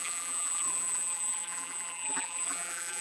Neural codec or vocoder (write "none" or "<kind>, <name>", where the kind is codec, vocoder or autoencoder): vocoder, BigVGAN v2